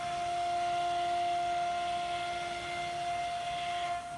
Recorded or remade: recorded